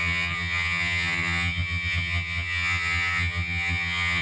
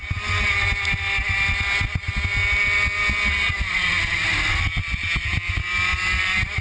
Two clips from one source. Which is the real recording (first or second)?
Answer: second